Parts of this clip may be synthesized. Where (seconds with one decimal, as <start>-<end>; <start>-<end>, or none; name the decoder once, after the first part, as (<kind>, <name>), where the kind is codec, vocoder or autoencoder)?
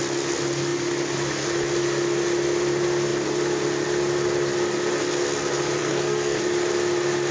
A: 5.8-6.4 (codec, SNAC)